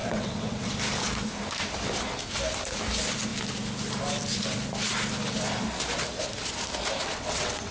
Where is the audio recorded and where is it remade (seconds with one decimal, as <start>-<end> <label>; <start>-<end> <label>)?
0.0-0.7 remade; 0.7-7.1 recorded; 7.1-7.7 remade